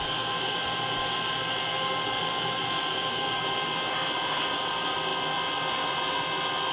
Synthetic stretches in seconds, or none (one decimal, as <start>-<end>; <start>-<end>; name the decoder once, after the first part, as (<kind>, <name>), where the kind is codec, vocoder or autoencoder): none